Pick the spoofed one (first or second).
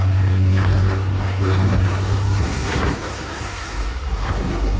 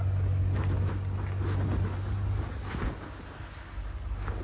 first